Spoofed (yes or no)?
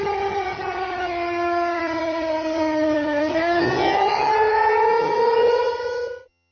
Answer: yes